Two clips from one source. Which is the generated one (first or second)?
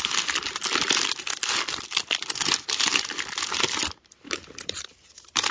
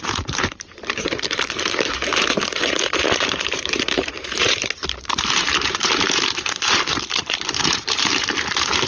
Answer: second